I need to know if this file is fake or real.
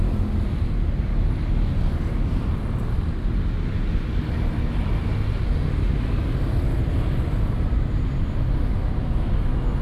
real